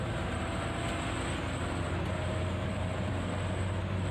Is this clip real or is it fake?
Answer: real